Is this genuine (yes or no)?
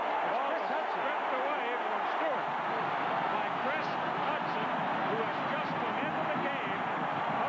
yes